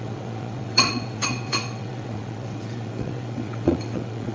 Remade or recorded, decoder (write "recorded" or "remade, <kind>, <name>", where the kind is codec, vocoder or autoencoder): remade, vocoder, WaveNeXt